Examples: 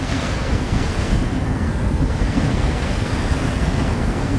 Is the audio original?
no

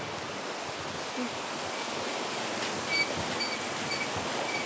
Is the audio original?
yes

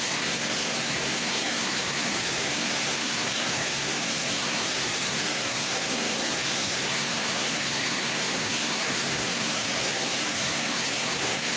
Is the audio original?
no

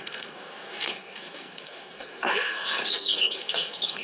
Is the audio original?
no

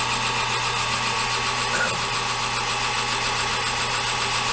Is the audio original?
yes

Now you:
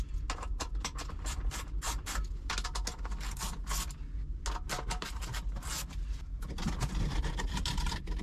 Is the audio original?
yes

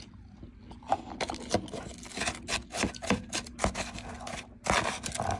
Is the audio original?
yes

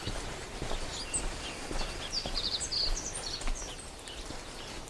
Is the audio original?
yes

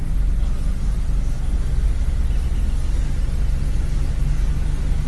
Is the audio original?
yes